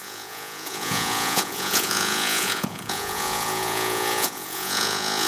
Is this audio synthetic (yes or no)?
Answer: yes